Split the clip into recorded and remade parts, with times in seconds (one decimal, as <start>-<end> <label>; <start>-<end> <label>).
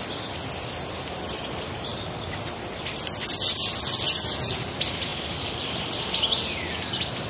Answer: 0.0-7.3 recorded